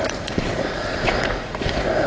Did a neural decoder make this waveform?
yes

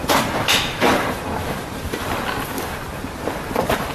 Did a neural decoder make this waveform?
no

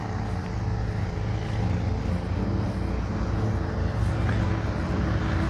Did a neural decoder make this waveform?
no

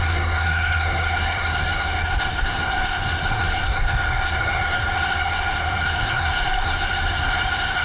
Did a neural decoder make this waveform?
yes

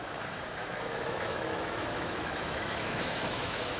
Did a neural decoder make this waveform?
yes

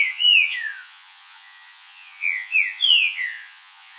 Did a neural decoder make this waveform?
yes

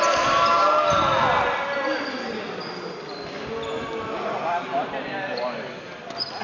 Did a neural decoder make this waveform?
no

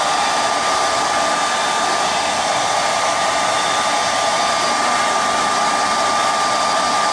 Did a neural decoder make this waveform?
no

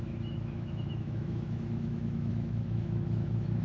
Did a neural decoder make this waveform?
yes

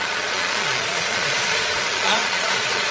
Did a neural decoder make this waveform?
yes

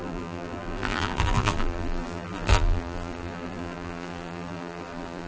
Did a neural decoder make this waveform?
yes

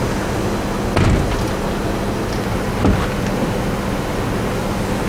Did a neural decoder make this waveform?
no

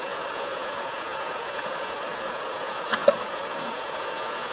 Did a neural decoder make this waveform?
yes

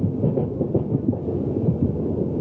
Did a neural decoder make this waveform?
no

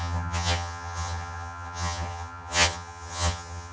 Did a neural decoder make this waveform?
yes